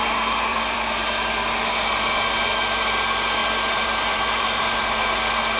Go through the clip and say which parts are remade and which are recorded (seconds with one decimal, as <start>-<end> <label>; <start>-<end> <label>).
0.0-0.5 recorded; 0.5-1.5 remade; 1.5-3.4 recorded; 3.4-4.6 remade; 4.6-5.6 recorded